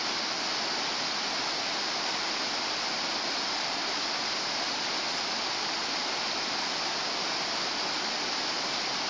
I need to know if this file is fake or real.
real